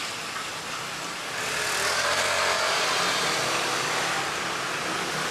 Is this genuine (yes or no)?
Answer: yes